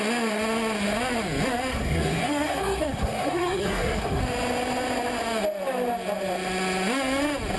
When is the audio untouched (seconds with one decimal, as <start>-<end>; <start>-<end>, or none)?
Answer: 0.0-1.7; 4.2-7.6